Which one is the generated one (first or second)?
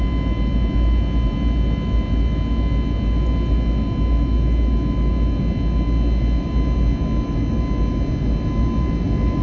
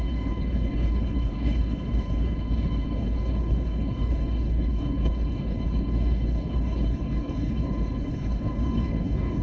second